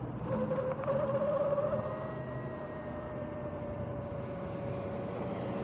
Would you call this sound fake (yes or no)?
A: no